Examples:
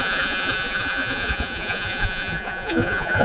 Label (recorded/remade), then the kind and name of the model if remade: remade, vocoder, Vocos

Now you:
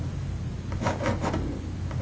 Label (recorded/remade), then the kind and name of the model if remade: recorded